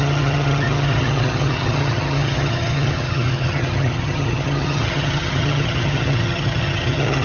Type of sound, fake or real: fake